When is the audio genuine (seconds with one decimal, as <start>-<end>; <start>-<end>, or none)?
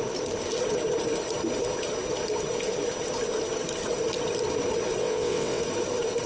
0.0-5.0; 5.6-6.3